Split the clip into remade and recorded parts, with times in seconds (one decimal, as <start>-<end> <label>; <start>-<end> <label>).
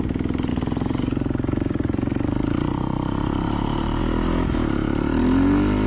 0.0-0.5 recorded; 0.5-4.0 remade; 4.0-5.9 recorded